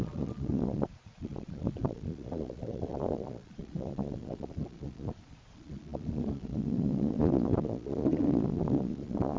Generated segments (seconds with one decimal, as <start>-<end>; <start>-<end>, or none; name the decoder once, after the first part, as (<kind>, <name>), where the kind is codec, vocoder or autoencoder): 0.0-9.4 (vocoder, Vocos)